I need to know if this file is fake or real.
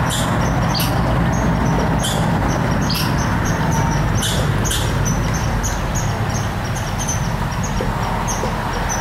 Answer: real